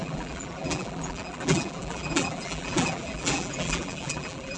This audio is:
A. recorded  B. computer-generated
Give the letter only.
B